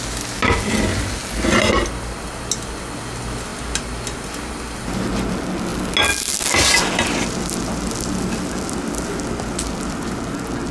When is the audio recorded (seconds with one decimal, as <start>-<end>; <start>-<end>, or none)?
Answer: 0.0-10.7